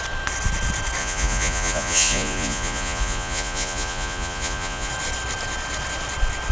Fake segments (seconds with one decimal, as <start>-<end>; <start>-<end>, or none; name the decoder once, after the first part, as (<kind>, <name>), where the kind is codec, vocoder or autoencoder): 1.0-4.9 (vocoder, Vocos)